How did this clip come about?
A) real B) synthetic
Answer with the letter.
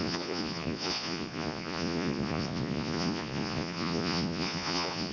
B